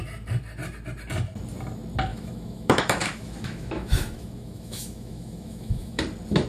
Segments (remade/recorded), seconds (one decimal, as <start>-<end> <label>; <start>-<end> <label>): 0.0-2.1 recorded; 2.1-6.0 remade; 6.0-6.5 recorded